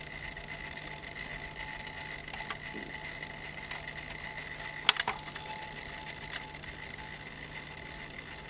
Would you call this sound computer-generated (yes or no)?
no